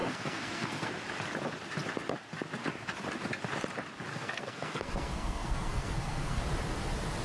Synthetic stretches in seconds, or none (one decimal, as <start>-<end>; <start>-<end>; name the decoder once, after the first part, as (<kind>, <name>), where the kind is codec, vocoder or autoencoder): 0.0-0.9 (codec, SNAC); 4.1-6.4